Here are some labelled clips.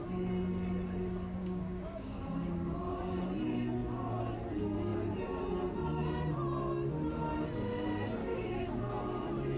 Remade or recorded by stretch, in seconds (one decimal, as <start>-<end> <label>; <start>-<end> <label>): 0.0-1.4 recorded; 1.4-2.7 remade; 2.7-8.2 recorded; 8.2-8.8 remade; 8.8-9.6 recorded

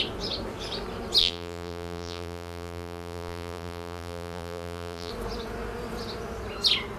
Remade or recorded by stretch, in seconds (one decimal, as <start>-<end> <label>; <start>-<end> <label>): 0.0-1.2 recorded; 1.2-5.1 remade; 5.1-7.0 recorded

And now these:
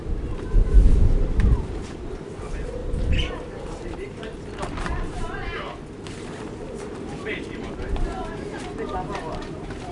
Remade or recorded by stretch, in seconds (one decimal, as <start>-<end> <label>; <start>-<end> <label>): 0.0-2.8 remade; 2.8-3.3 recorded; 3.3-5.4 remade; 5.4-7.7 recorded; 7.7-9.9 remade

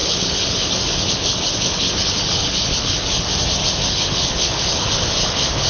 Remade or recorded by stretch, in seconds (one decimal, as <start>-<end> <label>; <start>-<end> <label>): 0.0-3.3 remade; 3.3-3.9 recorded; 3.9-5.7 remade

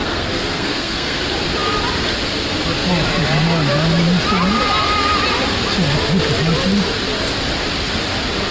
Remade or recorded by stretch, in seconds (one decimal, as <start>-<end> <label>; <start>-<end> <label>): 0.0-1.2 remade; 1.2-8.5 recorded